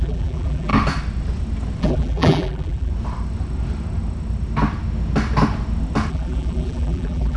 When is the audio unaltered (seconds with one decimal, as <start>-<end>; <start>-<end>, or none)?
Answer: 0.7-1.8; 2.9-6.1